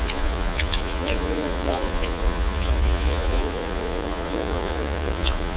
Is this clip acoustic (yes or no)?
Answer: no